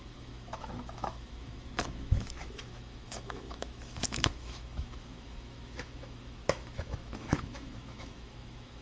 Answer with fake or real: fake